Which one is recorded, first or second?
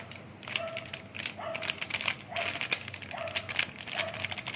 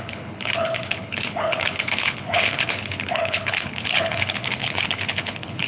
first